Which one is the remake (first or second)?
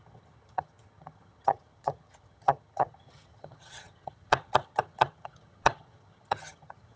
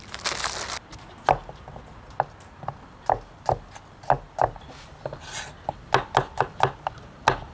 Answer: first